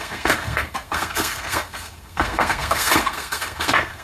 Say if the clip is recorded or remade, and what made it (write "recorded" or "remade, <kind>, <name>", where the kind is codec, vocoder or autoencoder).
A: remade, codec, SNAC